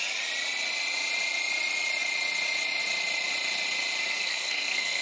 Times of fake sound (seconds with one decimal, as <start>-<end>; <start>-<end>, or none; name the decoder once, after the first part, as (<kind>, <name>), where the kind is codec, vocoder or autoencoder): 4.0-5.0 (codec, SNAC)